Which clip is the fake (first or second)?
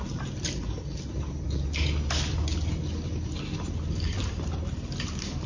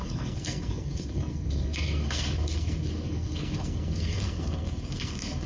second